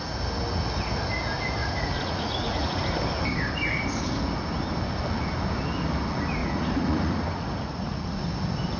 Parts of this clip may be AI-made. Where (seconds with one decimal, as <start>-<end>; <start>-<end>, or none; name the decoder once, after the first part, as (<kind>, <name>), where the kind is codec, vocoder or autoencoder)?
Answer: 1.6-2.8 (vocoder, Vocos); 6.4-8.2